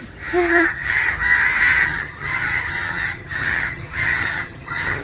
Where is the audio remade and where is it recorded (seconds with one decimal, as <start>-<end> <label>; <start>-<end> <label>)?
0.0-0.5 recorded; 0.5-1.1 remade; 1.1-1.7 recorded; 1.7-5.0 remade